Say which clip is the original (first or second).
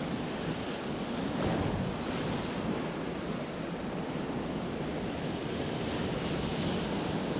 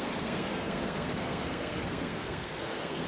first